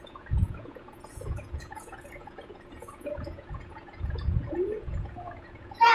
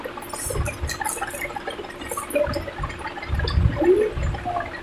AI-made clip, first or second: first